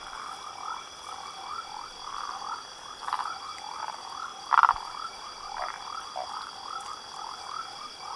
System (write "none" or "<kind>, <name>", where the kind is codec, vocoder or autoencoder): vocoder, BigVGAN v2